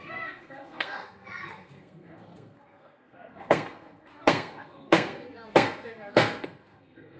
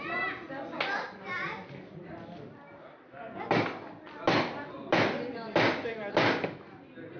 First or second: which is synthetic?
first